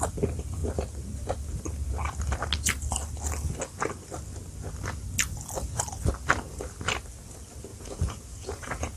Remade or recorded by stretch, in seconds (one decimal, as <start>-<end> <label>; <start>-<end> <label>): 0.0-7.7 recorded; 7.7-9.0 remade